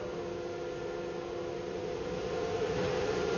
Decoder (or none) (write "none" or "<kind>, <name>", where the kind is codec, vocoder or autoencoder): none